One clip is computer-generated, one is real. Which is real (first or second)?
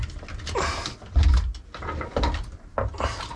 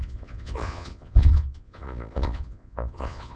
first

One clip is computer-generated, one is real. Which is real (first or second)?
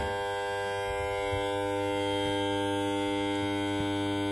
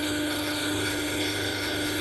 first